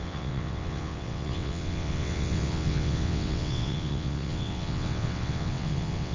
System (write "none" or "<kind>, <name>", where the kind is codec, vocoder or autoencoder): vocoder, WaveNeXt